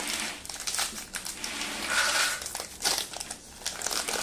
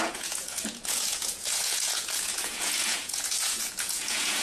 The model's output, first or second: second